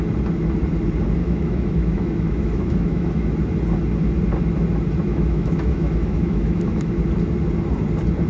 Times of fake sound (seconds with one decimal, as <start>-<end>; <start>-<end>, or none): 1.2-3.3; 5.1-6.9